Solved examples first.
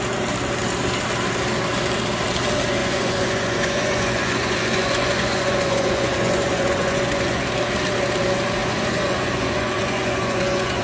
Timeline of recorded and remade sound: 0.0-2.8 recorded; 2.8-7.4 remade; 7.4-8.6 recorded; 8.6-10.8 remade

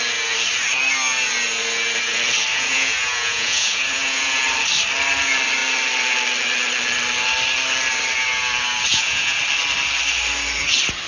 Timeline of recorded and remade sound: 0.0-2.5 recorded; 2.5-4.4 remade; 4.4-8.9 recorded; 8.9-9.4 remade; 9.4-11.1 recorded

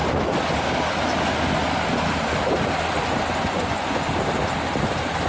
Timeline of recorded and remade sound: 0.0-3.3 recorded; 3.3-4.0 remade; 4.0-5.3 recorded